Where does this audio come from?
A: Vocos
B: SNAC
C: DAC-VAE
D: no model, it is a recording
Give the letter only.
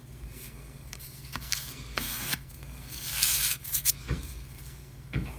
B